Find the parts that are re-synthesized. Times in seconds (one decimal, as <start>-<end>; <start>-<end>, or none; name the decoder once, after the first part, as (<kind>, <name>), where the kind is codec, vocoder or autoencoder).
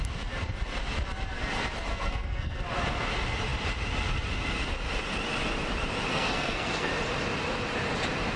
1.9-2.6 (codec, SNAC); 6.1-6.9